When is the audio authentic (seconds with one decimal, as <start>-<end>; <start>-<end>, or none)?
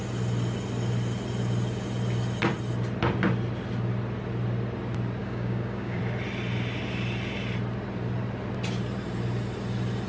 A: 0.0-5.2; 6.0-10.1